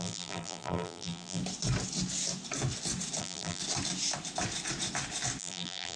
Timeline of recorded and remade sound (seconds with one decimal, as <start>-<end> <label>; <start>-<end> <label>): 0.0-1.4 remade; 1.4-3.2 recorded; 3.2-3.6 remade; 3.6-5.4 recorded; 5.4-6.0 remade